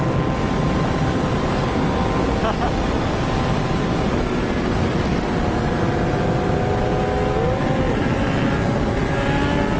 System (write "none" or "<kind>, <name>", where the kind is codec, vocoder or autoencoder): none